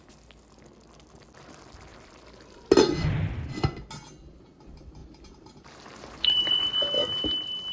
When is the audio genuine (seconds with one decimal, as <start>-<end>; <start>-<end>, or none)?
0.0-5.0; 6.5-7.7